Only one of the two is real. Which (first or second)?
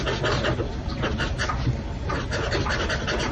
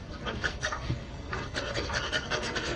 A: first